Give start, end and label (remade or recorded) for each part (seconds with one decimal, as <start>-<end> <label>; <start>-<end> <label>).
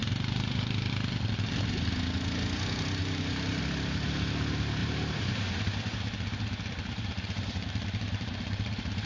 0.0-0.9 remade; 0.9-3.0 recorded; 3.0-3.6 remade; 3.6-4.8 recorded; 4.8-9.1 remade